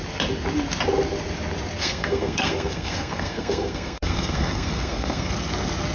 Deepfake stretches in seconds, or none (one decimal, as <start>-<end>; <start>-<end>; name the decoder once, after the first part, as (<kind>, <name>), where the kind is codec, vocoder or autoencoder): 1.8-5.3 (codec, SNAC)